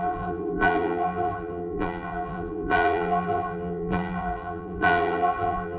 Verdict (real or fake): fake